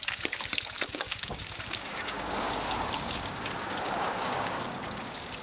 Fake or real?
fake